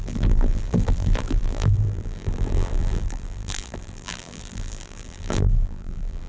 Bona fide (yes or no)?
no